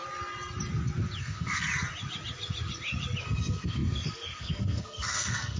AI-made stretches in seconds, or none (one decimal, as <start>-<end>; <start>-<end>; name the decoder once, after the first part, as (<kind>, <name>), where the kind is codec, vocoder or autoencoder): 1.2-1.7 (codec, SNAC); 3.2-5.6